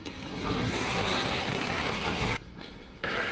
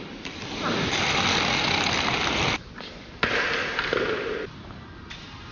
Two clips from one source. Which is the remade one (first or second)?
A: first